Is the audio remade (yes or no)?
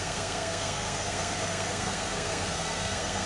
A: yes